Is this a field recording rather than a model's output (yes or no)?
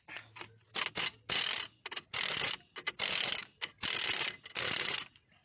yes